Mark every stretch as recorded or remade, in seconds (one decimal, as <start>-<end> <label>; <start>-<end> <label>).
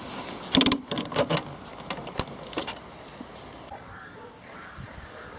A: 0.0-5.4 recorded